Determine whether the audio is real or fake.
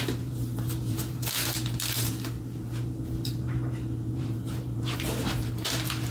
fake